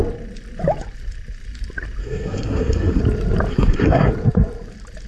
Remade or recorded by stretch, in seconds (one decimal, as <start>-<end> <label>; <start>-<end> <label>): 0.0-2.0 recorded; 2.0-3.0 remade; 3.0-3.5 recorded; 3.5-4.1 remade; 4.1-5.1 recorded